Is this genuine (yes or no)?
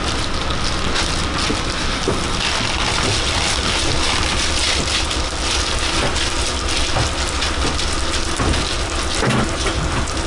yes